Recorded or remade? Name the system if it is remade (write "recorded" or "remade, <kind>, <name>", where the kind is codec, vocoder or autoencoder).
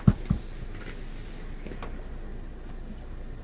recorded